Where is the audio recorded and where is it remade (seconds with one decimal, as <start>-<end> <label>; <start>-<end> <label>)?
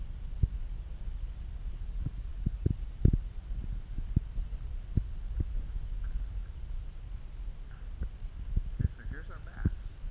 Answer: 0.0-10.1 recorded